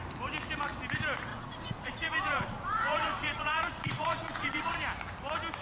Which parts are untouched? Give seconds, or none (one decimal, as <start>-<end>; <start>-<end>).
0.0-1.3; 4.7-5.6